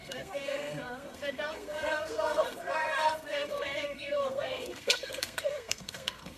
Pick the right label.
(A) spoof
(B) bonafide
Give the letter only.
A